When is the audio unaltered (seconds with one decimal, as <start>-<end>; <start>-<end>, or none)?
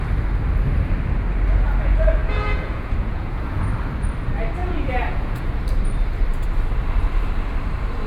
0.0-2.2; 3.7-4.6; 5.5-8.1